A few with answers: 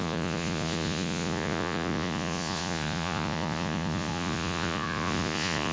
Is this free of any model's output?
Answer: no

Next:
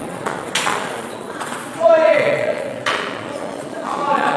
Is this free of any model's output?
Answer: no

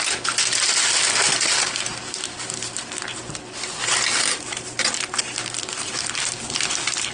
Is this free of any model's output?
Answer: yes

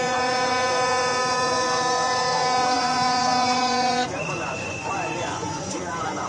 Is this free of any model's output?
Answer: no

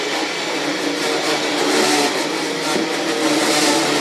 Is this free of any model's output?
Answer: yes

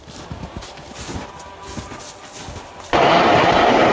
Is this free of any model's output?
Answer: yes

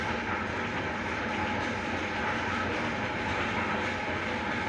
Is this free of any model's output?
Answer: yes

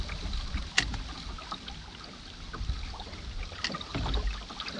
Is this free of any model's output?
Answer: yes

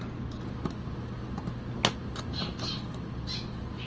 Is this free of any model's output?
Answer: yes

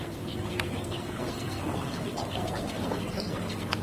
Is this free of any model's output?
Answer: no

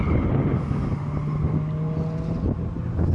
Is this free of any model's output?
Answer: yes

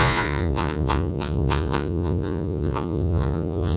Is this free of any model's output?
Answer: no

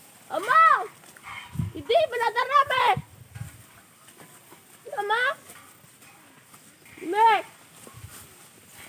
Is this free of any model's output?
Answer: yes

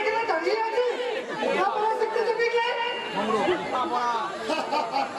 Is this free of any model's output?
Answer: yes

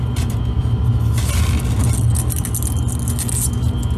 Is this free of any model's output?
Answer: yes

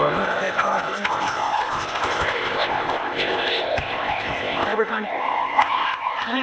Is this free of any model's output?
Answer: no